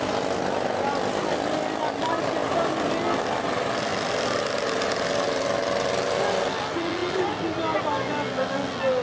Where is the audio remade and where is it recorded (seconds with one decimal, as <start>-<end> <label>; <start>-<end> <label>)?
0.0-2.4 recorded; 2.4-2.9 remade; 2.9-3.9 recorded; 3.9-4.4 remade; 4.4-9.0 recorded